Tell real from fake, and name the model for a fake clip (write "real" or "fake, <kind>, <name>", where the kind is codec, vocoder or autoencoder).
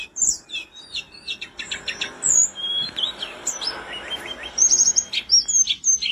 real